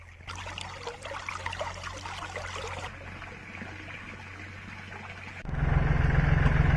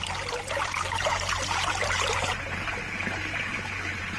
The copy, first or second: second